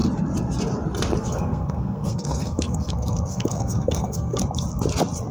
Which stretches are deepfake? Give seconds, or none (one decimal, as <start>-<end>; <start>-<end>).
1.2-4.4

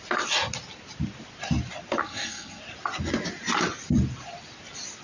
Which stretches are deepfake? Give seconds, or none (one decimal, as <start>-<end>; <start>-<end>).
2.0-2.6

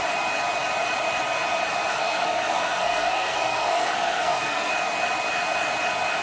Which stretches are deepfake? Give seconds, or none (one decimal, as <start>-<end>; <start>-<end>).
1.9-4.7

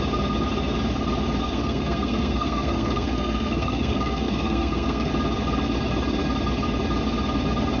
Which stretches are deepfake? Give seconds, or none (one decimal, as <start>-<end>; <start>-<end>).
1.4-5.1

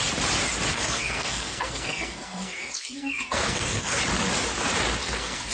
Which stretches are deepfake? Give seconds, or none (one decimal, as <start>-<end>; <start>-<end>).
0.7-4.0; 5.0-5.5

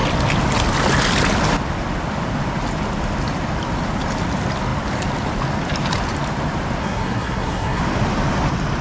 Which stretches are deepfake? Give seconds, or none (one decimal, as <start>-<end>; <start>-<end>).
6.8-7.8